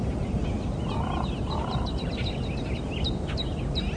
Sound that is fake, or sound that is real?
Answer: real